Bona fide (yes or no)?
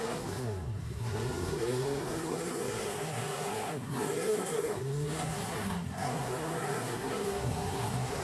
no